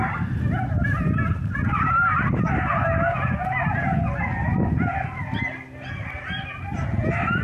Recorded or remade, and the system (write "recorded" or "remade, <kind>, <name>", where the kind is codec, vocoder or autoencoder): recorded